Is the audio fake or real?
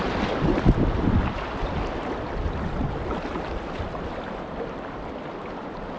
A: real